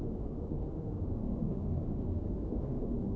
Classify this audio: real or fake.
fake